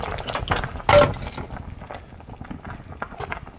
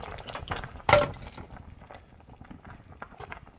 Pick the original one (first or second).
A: first